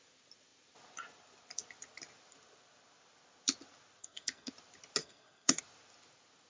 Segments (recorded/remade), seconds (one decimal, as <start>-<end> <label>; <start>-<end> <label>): 0.0-4.0 recorded; 4.0-4.5 remade; 4.5-5.0 recorded; 5.0-5.6 remade; 5.6-6.5 recorded